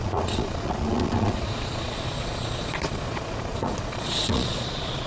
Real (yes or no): no